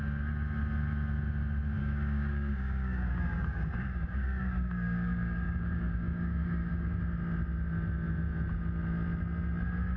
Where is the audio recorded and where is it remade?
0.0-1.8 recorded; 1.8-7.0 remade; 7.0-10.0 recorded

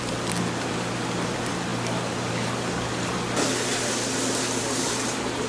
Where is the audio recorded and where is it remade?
0.0-5.5 recorded

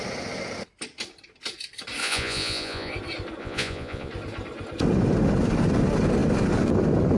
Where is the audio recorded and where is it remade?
0.0-2.0 recorded; 2.0-2.9 remade; 2.9-3.4 recorded; 3.4-4.1 remade; 4.1-7.2 recorded

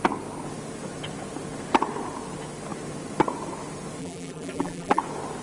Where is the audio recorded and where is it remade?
0.0-4.0 recorded; 4.0-5.0 remade; 5.0-5.4 recorded

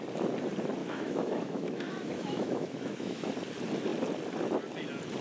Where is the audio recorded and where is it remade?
0.0-0.8 recorded; 0.8-3.3 remade; 3.3-5.2 recorded

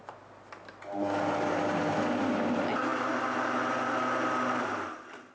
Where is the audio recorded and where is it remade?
0.0-5.3 recorded

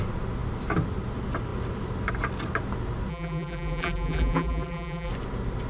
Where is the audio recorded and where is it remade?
0.0-3.1 recorded; 3.1-5.1 remade; 5.1-5.7 recorded